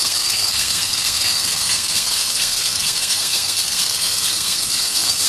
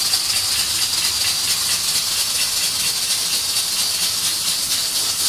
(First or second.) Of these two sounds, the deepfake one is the first